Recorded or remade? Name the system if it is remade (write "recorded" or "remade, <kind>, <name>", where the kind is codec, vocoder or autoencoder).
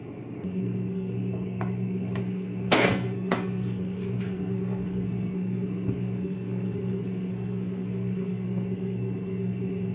remade, codec, SNAC